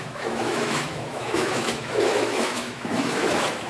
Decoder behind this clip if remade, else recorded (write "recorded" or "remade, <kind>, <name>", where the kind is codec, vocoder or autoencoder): remade, autoencoder, DAC-VAE